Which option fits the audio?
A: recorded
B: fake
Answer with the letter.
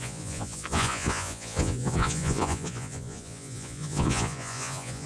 B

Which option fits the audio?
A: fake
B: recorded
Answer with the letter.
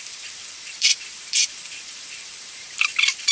A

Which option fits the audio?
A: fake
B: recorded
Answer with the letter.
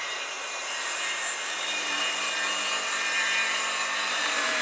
A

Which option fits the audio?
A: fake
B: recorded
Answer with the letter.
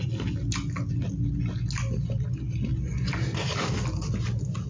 B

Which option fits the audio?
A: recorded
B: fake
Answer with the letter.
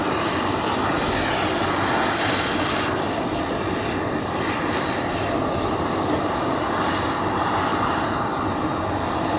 A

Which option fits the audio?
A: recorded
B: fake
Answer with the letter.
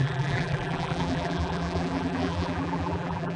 B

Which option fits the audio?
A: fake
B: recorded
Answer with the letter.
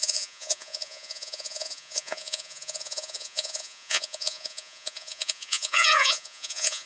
A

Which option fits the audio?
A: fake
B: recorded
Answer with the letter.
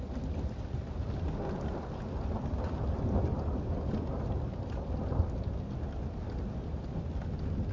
B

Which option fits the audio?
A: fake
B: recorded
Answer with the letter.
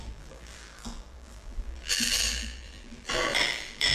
A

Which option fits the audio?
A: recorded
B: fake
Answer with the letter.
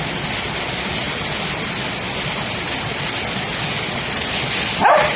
A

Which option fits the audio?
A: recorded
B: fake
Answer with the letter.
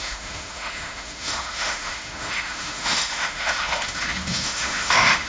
B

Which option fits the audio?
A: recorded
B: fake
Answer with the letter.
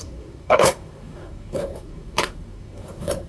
B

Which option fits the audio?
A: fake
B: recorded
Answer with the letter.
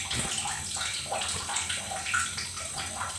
B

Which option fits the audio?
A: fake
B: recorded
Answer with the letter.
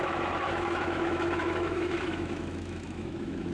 A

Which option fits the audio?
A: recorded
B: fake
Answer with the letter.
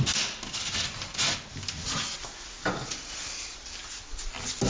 A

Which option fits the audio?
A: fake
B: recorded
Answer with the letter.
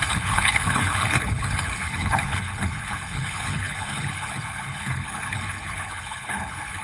A